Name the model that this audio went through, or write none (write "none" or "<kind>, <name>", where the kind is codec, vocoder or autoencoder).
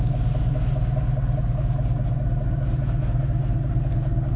none